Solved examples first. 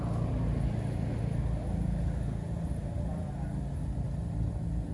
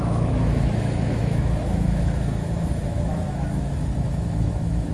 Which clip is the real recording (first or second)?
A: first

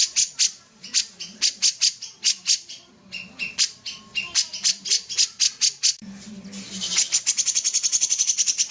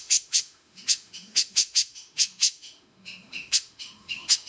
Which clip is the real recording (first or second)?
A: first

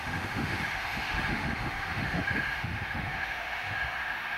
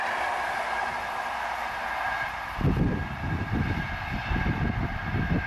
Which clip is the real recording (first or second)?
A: second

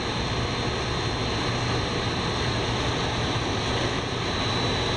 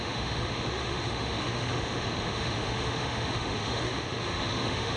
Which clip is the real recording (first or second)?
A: first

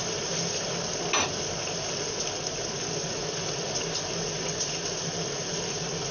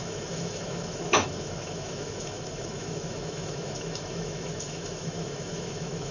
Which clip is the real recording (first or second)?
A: first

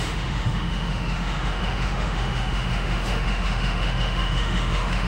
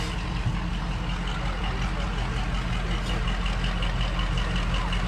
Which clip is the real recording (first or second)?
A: second